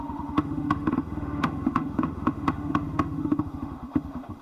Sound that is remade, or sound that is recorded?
remade